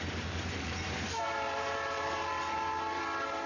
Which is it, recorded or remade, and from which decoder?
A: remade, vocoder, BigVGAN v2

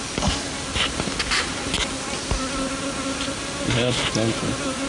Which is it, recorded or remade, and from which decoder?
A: recorded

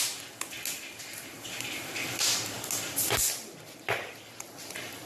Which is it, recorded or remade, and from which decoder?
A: recorded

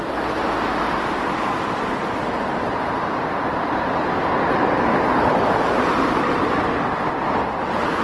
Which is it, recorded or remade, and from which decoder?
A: remade, vocoder, BigVGAN v2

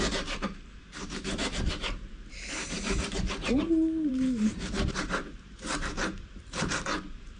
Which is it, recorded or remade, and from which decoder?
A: remade, vocoder, BigVGAN v2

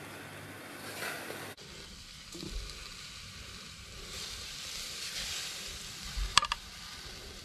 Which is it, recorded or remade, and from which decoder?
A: recorded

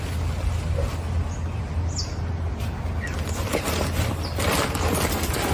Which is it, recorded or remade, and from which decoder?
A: recorded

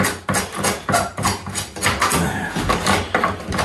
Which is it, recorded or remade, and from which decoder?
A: recorded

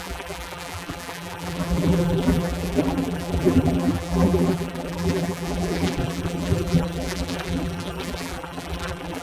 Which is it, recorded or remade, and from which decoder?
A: remade, vocoder, BigVGAN v2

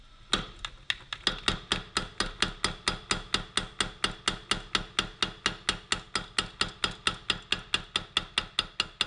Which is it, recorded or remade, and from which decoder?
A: recorded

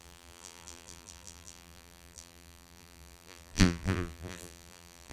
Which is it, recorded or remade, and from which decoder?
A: remade, vocoder, BigVGAN v2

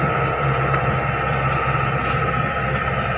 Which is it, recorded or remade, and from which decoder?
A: remade, vocoder, BigVGAN v2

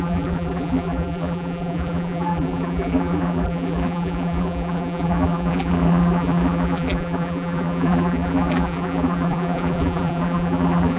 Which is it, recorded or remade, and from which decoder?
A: remade, vocoder, BigVGAN v2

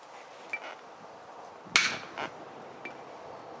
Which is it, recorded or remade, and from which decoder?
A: recorded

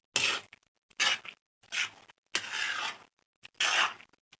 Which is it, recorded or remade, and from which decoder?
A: recorded